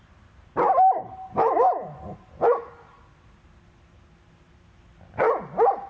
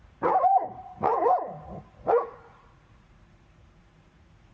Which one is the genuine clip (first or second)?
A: first